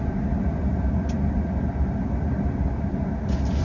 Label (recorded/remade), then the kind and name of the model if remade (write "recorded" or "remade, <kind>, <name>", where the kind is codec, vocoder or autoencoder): recorded